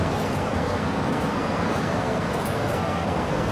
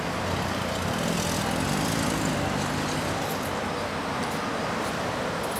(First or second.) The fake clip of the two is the first